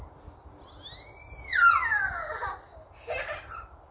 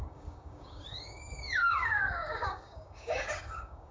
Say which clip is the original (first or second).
first